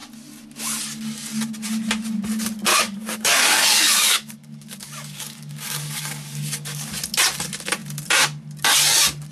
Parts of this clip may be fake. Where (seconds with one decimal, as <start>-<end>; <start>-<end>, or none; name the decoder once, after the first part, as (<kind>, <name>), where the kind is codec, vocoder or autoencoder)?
2.7-7.0 (codec, DAC)